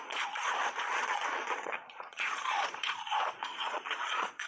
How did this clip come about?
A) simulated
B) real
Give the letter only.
A